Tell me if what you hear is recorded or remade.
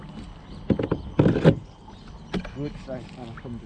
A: recorded